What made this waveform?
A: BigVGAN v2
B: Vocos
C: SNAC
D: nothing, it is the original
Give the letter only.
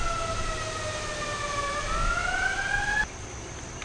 D